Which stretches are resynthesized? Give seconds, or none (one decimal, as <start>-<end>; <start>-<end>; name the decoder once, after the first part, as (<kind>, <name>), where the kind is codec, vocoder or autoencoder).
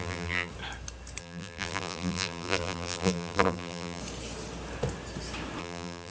0.0-0.5 (vocoder, BigVGAN v2); 1.2-4.0; 5.6-6.1